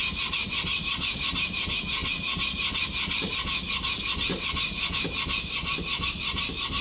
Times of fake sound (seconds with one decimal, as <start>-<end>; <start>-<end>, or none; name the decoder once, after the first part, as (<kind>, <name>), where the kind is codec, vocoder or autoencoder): none